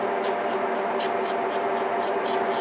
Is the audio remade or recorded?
recorded